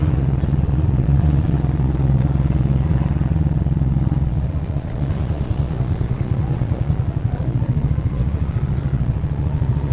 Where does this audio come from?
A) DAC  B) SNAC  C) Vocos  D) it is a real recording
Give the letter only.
C